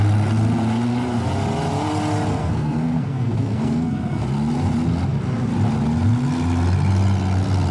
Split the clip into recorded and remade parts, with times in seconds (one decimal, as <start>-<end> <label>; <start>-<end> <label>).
0.0-2.4 recorded; 2.4-4.2 remade; 4.2-7.7 recorded

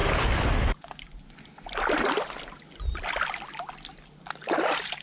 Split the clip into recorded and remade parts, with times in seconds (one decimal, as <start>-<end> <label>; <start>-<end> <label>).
0.0-5.0 recorded

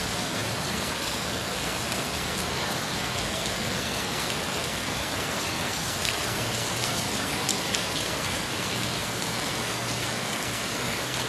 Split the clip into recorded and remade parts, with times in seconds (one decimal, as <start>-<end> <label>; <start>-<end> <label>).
0.0-11.3 remade

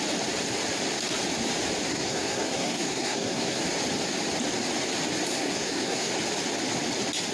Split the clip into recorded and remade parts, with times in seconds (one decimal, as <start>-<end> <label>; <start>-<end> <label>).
0.0-1.9 recorded; 1.9-3.6 remade; 3.6-5.3 recorded; 5.3-6.1 remade; 6.1-7.3 recorded